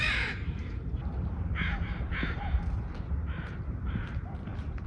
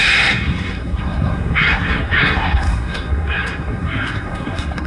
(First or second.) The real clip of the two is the first